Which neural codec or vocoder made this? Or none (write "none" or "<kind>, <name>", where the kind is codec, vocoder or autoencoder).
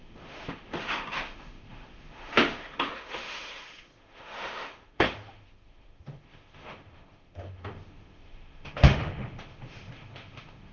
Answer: autoencoder, DAC-VAE